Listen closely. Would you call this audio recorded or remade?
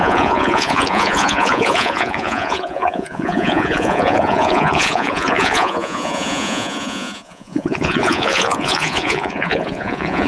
remade